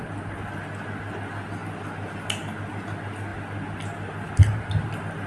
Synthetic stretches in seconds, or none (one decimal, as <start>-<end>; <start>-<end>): none